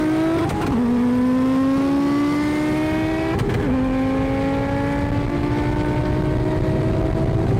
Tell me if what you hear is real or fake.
real